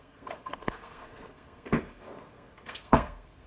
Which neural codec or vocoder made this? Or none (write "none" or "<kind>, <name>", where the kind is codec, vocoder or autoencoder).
codec, SNAC